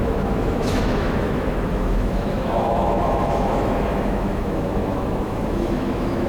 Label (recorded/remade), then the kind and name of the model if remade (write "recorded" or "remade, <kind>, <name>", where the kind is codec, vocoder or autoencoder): remade, autoencoder, DAC-VAE